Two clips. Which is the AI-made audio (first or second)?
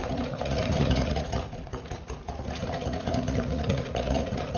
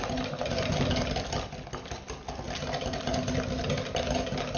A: first